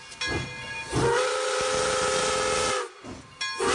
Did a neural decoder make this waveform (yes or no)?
no